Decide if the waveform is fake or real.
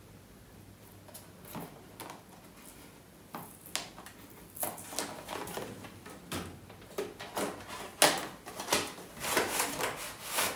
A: real